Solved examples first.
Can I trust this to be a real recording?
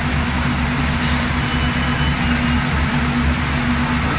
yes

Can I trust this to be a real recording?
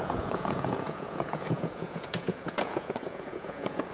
no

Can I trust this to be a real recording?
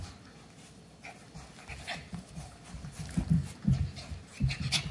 yes